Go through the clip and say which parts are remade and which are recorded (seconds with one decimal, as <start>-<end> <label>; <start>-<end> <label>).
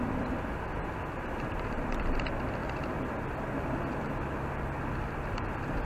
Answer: 0.0-5.9 recorded